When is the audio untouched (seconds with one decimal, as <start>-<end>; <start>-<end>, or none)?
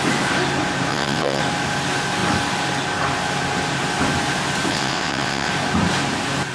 0.0-0.9; 1.4-4.7; 5.5-6.5